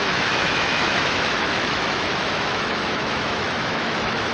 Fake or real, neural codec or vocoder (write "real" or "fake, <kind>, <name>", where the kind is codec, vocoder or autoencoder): fake, autoencoder, DAC-VAE